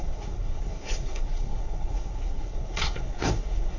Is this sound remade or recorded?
remade